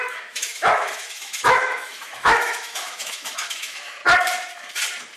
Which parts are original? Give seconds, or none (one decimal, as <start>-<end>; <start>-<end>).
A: 4.0-5.2